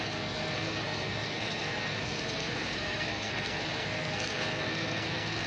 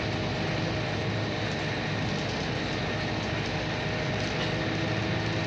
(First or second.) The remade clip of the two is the first